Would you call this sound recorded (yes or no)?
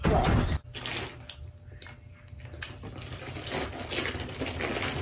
yes